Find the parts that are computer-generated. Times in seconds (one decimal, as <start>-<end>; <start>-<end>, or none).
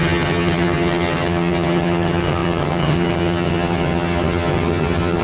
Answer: 0.0-5.2